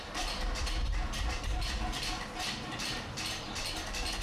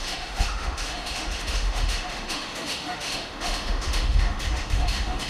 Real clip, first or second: first